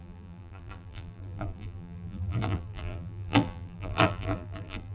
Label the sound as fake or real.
fake